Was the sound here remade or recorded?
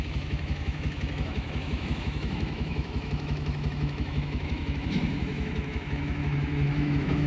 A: remade